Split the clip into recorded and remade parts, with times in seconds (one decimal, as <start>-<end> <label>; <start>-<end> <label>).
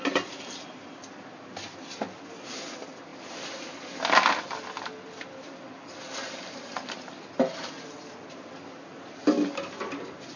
0.0-10.4 recorded